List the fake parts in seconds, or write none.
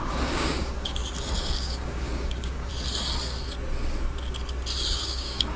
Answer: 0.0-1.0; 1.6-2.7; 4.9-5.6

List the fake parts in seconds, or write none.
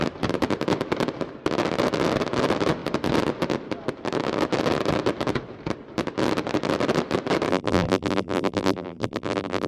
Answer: 7.5-9.7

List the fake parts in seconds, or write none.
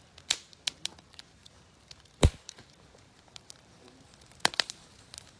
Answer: 0.9-4.1